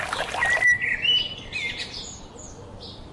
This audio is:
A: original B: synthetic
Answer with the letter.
A